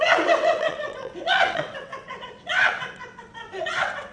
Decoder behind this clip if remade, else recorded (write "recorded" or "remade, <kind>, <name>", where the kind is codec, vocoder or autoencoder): remade, vocoder, WaveNeXt